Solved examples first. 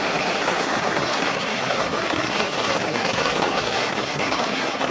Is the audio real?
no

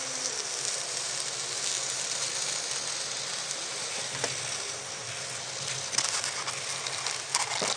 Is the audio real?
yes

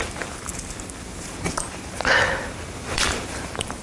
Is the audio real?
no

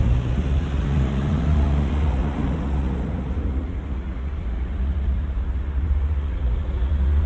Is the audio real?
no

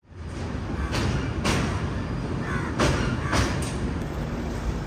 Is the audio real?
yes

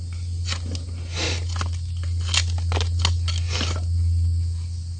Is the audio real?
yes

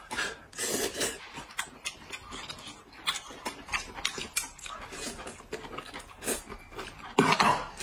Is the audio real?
yes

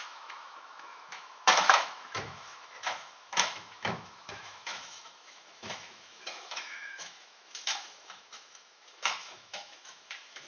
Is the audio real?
no